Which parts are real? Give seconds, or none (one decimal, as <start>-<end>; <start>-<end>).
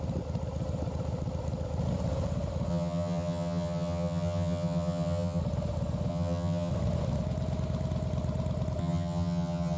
0.0-2.7; 5.4-6.1; 6.7-8.8